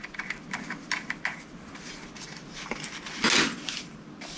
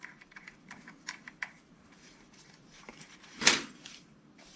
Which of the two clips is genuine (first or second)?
first